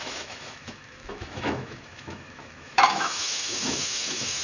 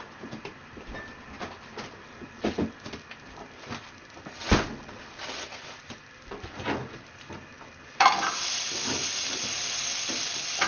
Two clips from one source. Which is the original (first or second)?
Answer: second